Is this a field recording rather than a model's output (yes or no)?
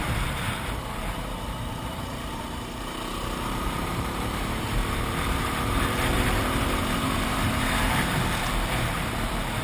no